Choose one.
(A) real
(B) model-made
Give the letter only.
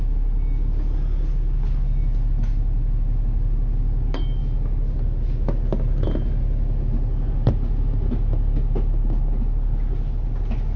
A